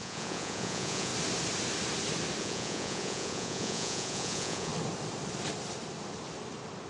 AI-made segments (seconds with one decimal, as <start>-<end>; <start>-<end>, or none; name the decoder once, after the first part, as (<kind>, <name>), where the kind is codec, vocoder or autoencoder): 0.0-1.1 (vocoder, Vocos); 2.4-4.7